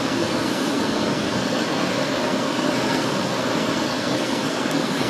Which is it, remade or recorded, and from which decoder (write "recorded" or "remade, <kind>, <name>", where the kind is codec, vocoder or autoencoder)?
remade, codec, SNAC